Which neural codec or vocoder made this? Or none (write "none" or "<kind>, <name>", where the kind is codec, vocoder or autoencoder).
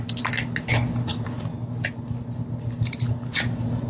none